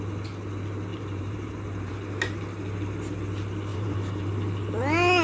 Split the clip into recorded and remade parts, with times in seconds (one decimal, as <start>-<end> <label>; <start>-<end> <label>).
0.0-0.9 recorded; 0.9-1.9 remade; 1.9-3.7 recorded; 3.7-4.3 remade; 4.3-5.2 recorded